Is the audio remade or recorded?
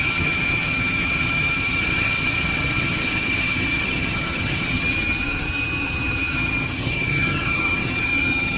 remade